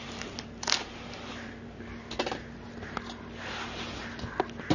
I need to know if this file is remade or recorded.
recorded